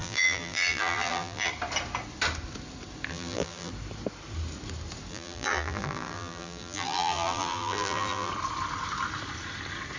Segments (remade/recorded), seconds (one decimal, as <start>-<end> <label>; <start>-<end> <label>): 0.0-1.5 remade; 1.5-3.1 recorded; 3.1-3.7 remade; 3.7-5.1 recorded; 5.1-8.3 remade; 8.3-10.0 recorded